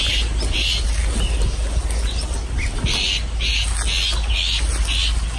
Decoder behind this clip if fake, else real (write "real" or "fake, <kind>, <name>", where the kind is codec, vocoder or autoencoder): real